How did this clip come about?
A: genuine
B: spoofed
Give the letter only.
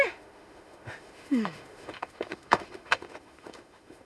B